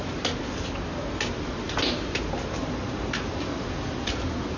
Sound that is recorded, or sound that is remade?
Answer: recorded